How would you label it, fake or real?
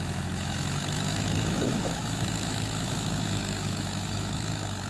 fake